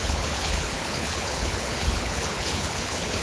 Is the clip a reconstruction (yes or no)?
yes